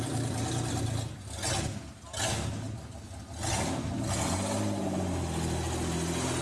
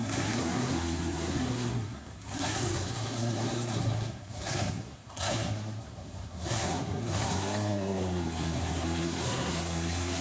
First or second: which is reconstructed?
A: second